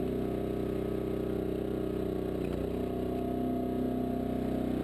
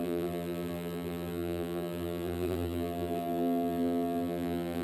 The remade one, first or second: second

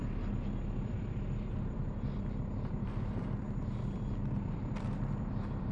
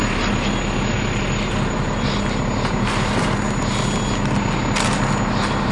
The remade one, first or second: first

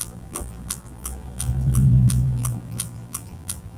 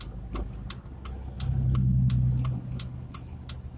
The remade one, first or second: first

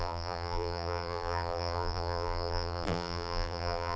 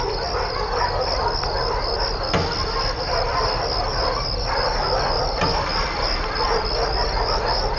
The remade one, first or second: first